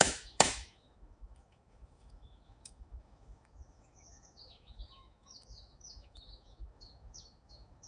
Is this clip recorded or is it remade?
remade